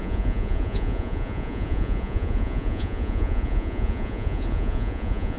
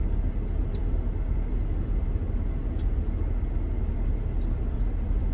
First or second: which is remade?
first